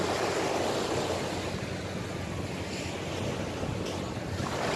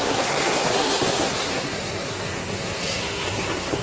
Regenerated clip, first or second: second